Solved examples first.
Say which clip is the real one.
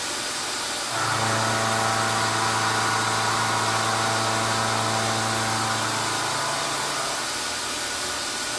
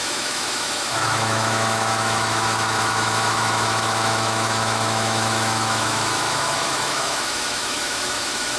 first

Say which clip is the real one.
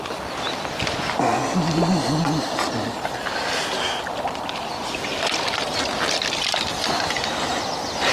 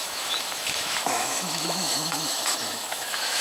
first